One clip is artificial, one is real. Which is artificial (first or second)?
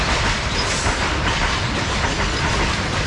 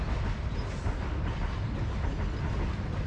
first